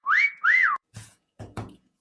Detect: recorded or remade remade